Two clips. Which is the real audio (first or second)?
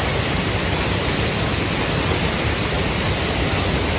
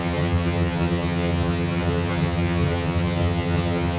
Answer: first